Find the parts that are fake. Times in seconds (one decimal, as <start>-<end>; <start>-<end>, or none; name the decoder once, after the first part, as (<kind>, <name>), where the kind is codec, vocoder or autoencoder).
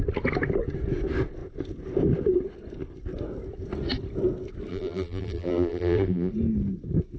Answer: 4.7-6.3 (vocoder, BigVGAN v2)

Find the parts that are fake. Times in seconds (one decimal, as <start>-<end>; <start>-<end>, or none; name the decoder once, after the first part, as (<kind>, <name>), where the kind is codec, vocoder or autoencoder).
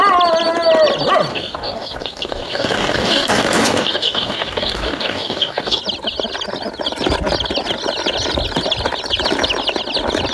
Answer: 1.3-5.8 (codec, DAC)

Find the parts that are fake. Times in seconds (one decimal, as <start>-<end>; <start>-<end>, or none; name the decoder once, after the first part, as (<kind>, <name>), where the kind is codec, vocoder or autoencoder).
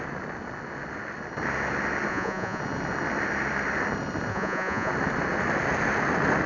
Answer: 2.1-2.6 (vocoder, Vocos); 4.3-4.9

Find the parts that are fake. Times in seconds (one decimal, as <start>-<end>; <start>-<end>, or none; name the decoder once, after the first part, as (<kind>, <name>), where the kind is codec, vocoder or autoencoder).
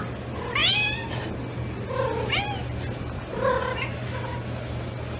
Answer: none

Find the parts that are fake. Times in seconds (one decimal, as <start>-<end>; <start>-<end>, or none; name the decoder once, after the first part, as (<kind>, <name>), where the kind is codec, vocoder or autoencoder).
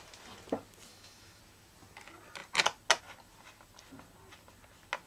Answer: 0.9-1.4 (autoencoder, DAC-VAE)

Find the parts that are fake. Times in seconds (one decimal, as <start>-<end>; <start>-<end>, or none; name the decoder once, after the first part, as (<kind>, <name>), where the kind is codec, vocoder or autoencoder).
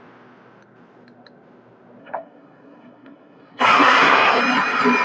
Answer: 2.0-4.4 (codec, SNAC)